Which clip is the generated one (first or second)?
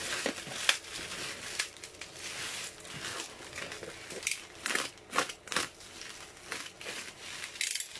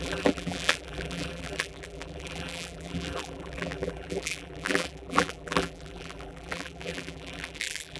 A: second